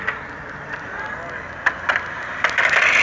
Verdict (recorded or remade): recorded